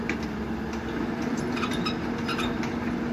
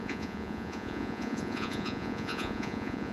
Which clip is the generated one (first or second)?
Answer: second